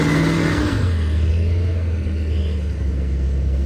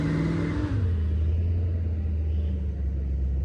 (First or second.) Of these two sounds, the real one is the second